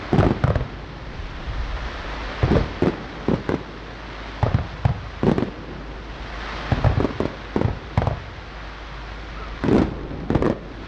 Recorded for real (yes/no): yes